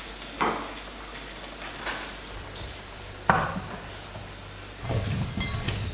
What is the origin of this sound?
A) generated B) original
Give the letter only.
B